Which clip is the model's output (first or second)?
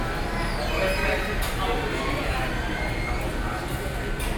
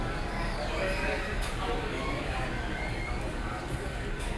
second